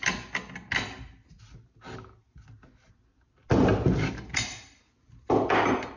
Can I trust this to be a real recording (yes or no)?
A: yes